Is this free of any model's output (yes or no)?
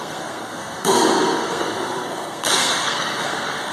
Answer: no